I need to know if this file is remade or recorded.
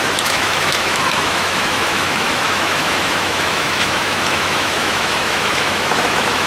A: remade